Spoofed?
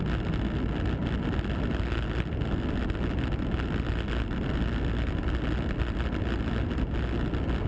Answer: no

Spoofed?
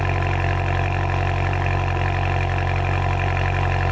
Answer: no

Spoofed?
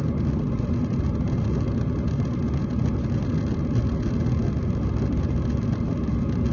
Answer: no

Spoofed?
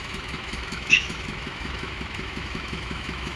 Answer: yes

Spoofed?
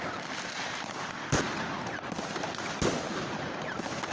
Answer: no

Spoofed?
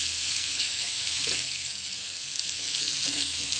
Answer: yes